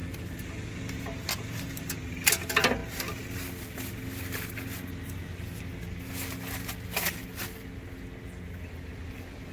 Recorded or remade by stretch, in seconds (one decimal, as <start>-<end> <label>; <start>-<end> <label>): 0.0-9.5 recorded